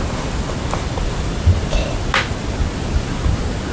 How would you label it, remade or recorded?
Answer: recorded